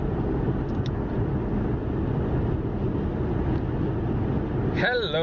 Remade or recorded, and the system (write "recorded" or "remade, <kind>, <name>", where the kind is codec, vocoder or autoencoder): recorded